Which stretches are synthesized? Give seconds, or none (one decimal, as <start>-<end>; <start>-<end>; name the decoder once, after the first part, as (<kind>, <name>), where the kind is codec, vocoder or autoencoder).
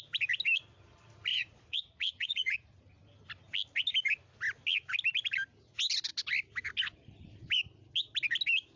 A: 1.3-2.8 (vocoder, Vocos)